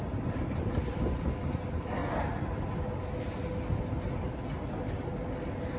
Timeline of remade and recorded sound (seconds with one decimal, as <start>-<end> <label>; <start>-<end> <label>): 0.0-2.0 remade; 2.0-5.8 recorded